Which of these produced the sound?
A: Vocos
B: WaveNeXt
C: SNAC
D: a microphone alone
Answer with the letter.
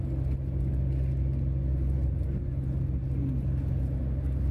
D